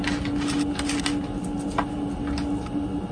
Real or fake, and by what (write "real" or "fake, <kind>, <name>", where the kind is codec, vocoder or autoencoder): real